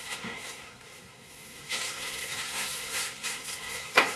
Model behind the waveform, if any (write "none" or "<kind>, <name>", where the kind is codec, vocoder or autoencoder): codec, SNAC